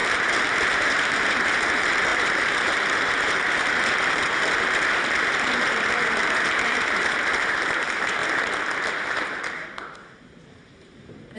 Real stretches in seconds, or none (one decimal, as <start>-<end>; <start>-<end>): 8.2-9.1